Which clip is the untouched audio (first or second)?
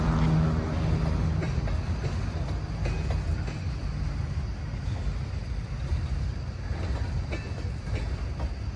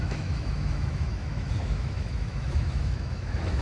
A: first